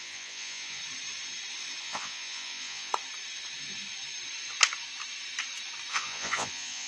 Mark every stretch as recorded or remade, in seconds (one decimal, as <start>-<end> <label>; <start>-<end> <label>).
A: 0.0-0.8 remade; 0.8-1.8 recorded; 1.8-2.9 remade; 2.9-5.9 recorded; 5.9-6.9 remade